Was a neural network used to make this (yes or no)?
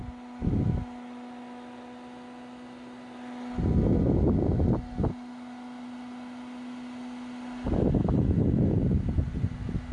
no